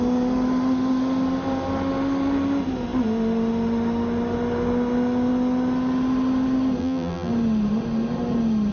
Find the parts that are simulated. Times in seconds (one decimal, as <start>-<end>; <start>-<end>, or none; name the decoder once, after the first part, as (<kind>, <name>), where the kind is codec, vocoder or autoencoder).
6.8-7.3 (vocoder, BigVGAN v2)